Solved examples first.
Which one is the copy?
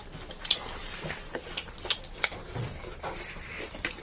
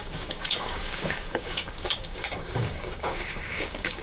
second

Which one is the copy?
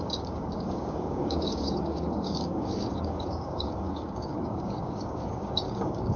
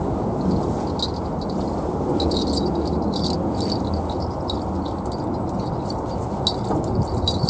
first